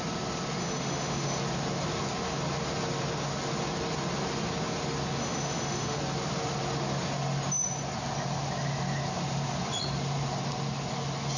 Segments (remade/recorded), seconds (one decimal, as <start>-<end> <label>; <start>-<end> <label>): 0.0-0.6 recorded; 0.6-1.4 remade; 1.4-5.2 recorded; 5.2-6.0 remade; 6.0-11.4 recorded